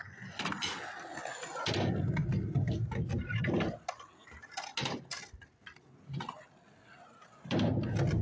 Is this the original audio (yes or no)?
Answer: yes